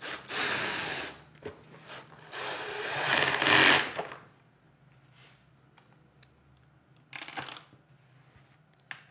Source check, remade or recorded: recorded